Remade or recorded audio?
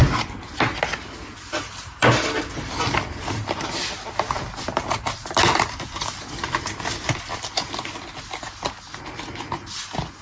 recorded